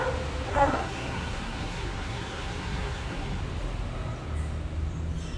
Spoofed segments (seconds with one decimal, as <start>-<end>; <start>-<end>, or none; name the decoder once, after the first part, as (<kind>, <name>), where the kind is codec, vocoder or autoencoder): 0.5-3.4 (codec, SNAC)